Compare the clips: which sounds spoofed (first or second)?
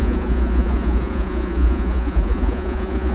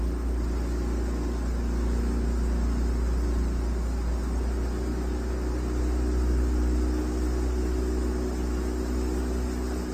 first